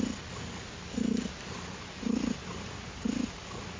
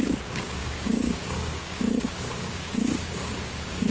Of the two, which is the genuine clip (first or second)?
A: first